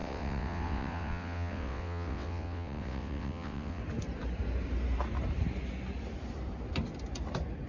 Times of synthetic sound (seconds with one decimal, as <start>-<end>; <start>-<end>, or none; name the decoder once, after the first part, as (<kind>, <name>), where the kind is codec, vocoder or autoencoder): 0.0-3.8 (vocoder, WaveNeXt)